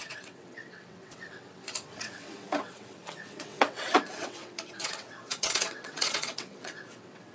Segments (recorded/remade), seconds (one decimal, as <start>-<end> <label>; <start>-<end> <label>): 0.0-7.3 remade